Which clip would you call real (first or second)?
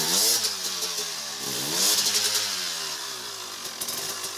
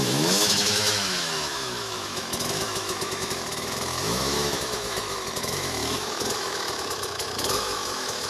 first